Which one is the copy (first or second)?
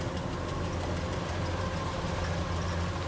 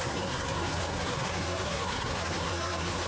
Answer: second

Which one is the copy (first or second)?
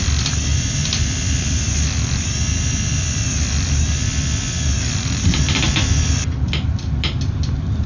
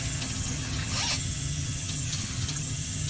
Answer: second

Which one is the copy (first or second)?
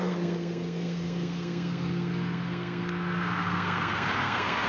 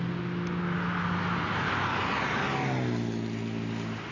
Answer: first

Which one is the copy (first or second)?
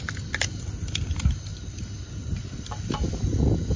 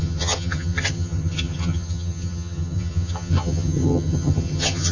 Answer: second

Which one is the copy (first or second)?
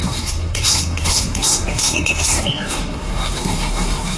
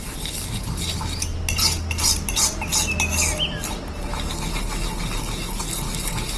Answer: first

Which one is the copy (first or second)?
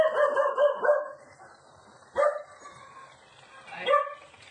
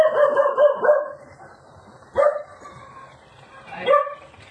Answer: second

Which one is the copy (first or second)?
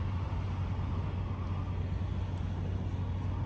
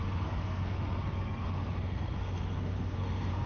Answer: second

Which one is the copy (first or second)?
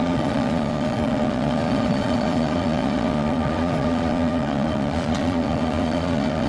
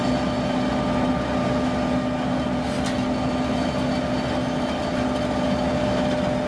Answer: first